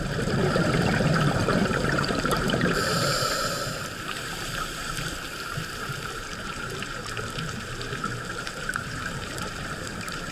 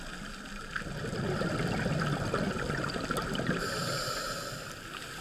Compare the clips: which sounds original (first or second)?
second